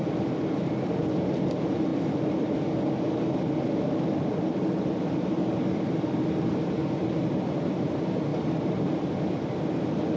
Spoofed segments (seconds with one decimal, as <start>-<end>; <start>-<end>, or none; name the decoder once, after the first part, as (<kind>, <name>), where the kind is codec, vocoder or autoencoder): 1.9-6.2 (vocoder, BigVGAN v2); 8.3-8.8